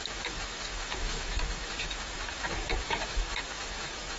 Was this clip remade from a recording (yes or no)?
yes